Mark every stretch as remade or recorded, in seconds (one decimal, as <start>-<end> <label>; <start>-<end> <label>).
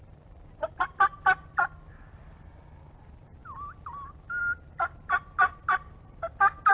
0.0-6.7 recorded